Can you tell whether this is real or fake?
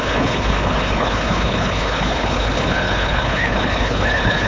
fake